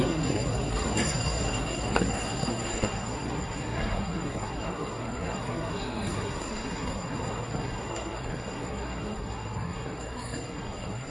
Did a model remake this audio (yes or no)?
yes